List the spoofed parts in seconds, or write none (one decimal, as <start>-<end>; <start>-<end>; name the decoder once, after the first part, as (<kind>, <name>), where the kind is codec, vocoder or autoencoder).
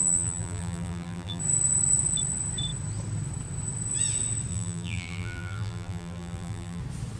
0.0-1.4 (vocoder, BigVGAN v2); 4.5-6.8